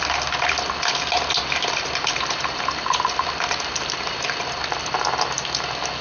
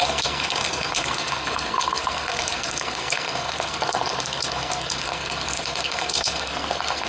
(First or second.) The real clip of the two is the first